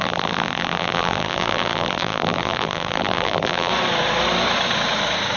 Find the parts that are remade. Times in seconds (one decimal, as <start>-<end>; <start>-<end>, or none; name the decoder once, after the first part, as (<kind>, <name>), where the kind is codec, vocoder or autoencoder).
0.0-3.7 (vocoder, BigVGAN v2)